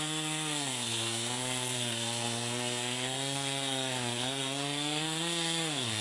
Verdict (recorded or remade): remade